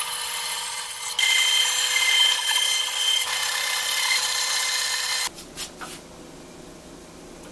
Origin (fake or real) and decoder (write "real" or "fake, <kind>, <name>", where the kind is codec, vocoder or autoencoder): real